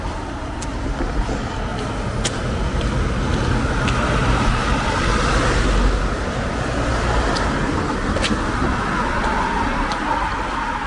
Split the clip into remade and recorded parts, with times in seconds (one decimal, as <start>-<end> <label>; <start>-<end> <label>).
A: 0.0-10.9 recorded